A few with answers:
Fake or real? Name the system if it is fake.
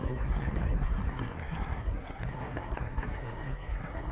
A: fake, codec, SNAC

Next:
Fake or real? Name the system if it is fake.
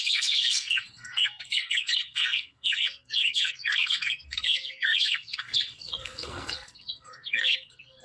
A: fake, codec, SNAC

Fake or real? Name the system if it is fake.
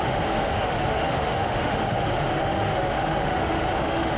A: fake, autoencoder, DAC-VAE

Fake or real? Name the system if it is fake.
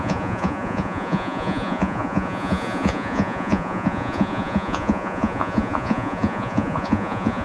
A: fake, vocoder, Vocos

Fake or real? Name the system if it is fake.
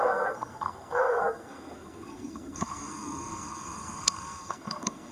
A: fake, codec, SNAC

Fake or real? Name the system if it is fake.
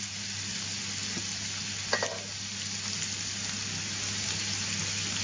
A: real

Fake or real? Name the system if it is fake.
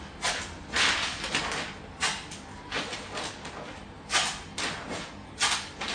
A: real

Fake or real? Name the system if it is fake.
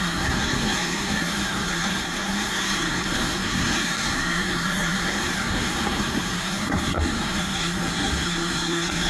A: fake, codec, SNAC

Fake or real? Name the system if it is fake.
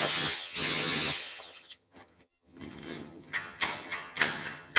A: fake, vocoder, HiFi-GAN